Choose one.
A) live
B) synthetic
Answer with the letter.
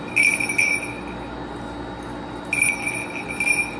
A